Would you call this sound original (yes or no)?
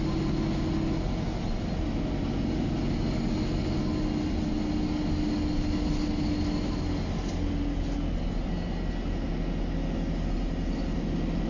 yes